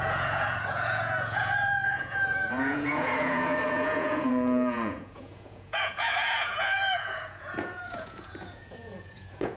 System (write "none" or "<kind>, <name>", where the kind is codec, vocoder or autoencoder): vocoder, Vocos